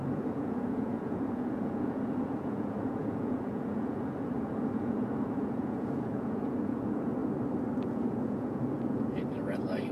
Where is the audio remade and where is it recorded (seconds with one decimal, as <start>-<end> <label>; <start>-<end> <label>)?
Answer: 0.0-7.2 remade; 7.2-7.8 recorded; 7.8-9.9 remade